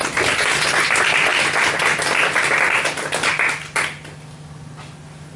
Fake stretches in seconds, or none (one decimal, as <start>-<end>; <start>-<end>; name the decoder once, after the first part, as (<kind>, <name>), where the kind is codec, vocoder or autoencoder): none